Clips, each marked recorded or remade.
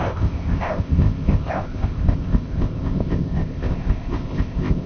remade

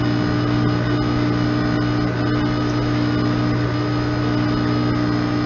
recorded